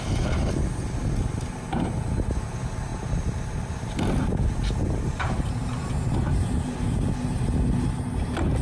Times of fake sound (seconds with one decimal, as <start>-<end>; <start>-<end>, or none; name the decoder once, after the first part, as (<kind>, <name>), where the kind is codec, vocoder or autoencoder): none